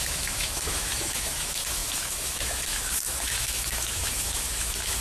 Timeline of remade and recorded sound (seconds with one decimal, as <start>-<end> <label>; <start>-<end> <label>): 0.0-5.0 remade